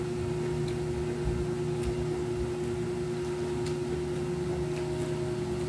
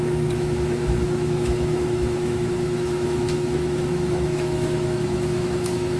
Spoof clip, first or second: second